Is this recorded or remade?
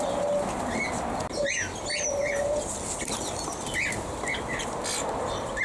recorded